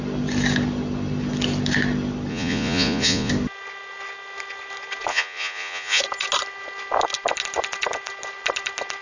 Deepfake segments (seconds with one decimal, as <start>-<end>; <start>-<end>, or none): 2.3-3.3; 5.1-6.0